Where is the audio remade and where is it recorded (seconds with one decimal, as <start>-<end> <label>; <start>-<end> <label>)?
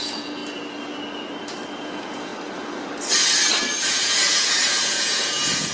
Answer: 0.0-0.4 remade; 0.4-1.8 recorded; 1.8-2.3 remade; 2.3-3.8 recorded; 3.8-5.7 remade